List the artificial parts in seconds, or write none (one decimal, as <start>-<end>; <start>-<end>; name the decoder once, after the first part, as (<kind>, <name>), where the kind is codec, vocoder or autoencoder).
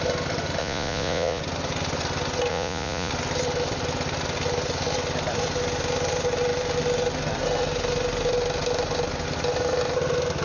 0.6-1.4 (vocoder, Vocos); 2.5-3.1